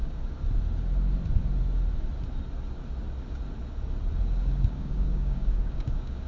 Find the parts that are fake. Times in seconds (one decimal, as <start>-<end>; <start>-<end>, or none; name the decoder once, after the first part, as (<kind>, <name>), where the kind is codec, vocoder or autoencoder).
0.0-0.4 (codec, DAC); 4.2-6.3